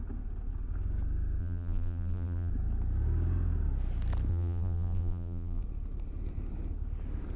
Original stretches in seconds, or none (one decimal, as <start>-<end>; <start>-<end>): 0.0-1.4; 2.5-4.3; 5.6-7.4

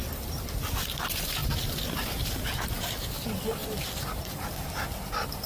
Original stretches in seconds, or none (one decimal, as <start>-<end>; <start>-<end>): 0.0-5.5

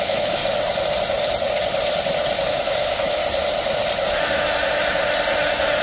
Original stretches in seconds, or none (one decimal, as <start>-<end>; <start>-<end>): 0.4-2.5; 3.2-5.8

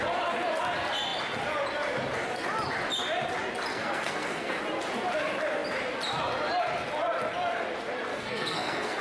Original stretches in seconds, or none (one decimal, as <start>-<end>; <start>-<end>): 0.0-3.7; 4.6-8.1

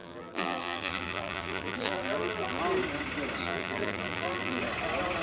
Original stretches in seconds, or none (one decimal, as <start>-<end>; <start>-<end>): 2.6-3.4; 4.6-5.2